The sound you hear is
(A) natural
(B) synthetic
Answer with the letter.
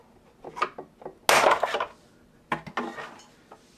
A